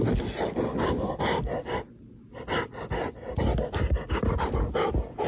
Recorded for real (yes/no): yes